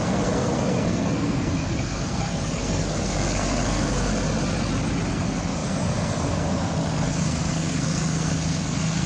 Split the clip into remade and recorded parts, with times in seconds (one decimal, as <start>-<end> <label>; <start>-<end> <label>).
0.0-4.1 remade; 4.1-5.1 recorded; 5.1-9.1 remade